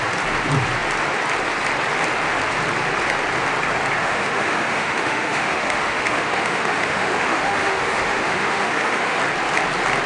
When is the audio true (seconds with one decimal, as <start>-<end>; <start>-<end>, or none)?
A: 0.0-4.0; 9.2-10.1